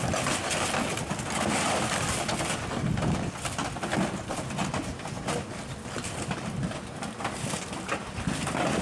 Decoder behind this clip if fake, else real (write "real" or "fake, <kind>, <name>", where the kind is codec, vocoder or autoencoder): real